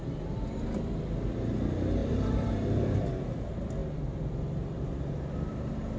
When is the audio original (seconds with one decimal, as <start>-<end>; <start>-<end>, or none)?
0.0-2.0; 3.1-6.0